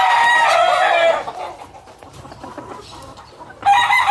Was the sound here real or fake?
real